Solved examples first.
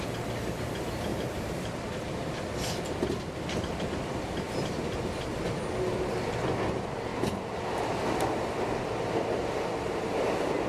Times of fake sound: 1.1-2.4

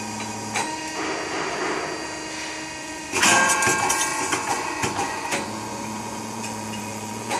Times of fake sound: 2.8-3.6; 4.1-7.4

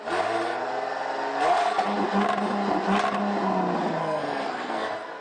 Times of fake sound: 4.0-5.2

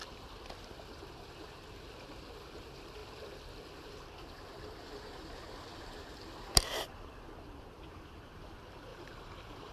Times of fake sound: 8.9-9.7

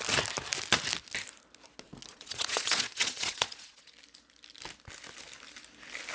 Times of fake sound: 2.1-3.9